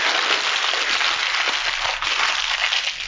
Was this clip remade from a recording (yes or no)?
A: no